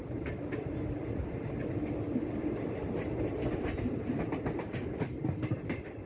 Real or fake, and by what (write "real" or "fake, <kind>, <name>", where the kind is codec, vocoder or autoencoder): real